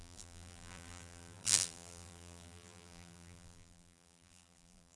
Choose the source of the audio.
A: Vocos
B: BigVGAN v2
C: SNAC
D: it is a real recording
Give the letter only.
B